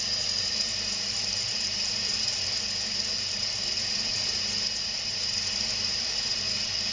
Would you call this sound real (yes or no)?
no